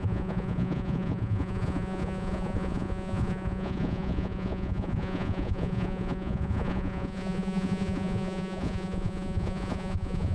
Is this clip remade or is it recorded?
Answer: remade